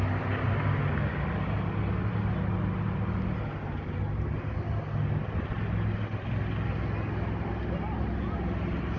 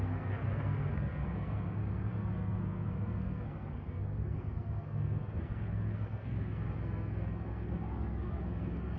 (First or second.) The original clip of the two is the first